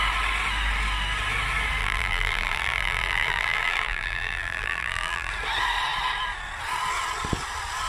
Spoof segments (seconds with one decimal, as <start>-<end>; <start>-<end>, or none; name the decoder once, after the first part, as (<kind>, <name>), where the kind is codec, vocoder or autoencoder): 1.8-5.3 (vocoder, BigVGAN v2)